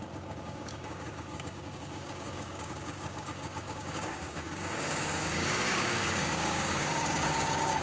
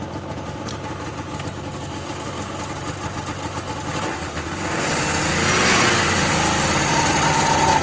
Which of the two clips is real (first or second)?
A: second